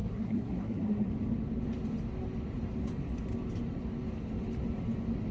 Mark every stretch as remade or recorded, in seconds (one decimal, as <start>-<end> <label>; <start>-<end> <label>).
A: 0.0-1.1 remade; 1.1-5.3 recorded